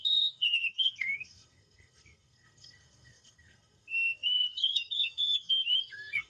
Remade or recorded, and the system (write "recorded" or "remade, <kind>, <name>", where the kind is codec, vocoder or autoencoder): remade, codec, SNAC